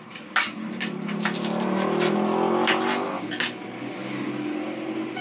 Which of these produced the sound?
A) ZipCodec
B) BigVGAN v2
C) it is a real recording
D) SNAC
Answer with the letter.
C